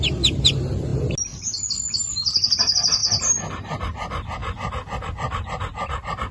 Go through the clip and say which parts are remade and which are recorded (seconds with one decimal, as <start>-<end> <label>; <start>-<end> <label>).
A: 0.0-6.3 recorded